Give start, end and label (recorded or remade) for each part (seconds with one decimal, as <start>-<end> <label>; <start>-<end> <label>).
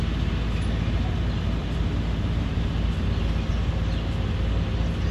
0.0-1.6 recorded; 1.6-3.5 remade; 3.5-5.1 recorded